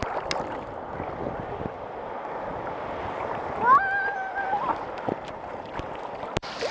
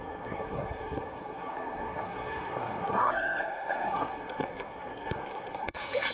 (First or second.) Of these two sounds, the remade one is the second